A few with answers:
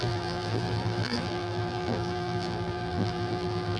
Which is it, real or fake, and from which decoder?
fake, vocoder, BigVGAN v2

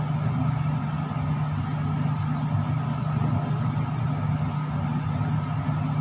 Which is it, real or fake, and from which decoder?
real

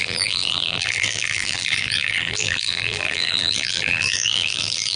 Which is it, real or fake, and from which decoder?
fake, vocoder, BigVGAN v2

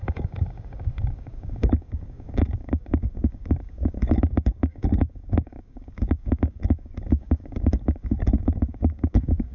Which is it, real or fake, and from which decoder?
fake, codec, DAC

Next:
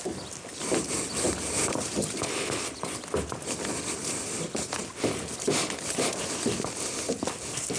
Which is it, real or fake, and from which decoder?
real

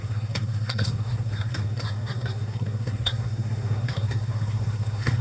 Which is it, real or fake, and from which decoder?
fake, codec, SNAC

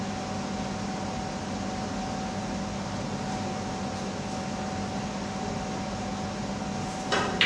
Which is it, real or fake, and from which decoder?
real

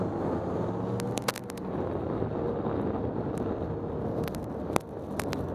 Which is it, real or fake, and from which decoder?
real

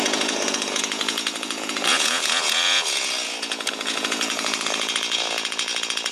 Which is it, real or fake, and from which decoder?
fake, vocoder, Vocos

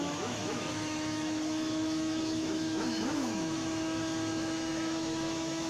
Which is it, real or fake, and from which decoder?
fake, autoencoder, DAC-VAE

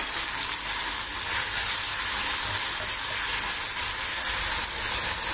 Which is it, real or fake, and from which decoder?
real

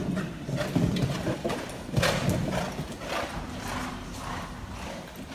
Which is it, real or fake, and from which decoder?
real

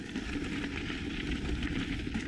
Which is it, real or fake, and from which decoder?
real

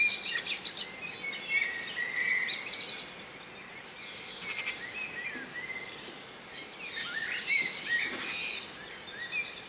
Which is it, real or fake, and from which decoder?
real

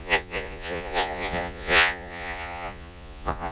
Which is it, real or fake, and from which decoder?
fake, vocoder, Vocos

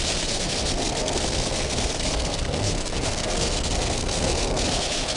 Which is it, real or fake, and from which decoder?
fake, codec, SNAC